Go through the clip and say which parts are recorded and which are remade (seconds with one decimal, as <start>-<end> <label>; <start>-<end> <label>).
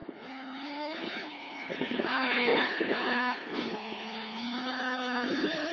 0.0-5.7 remade